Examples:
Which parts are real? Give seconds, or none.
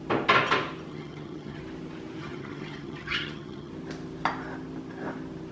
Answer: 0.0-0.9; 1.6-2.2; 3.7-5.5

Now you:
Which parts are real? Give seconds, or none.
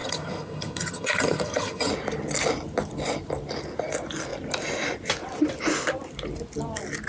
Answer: 1.9-7.1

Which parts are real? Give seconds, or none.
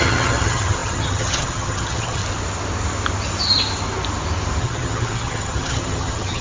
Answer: 2.2-4.6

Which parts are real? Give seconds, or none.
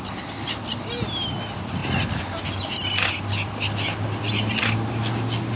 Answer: 0.0-5.6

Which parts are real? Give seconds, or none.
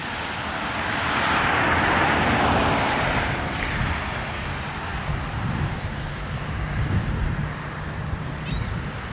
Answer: 0.0-9.1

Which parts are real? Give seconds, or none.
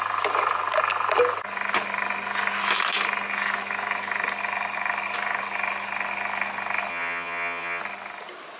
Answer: 0.0-6.9; 7.8-8.6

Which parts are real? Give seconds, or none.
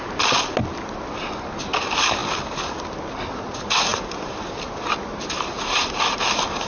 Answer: 0.0-6.7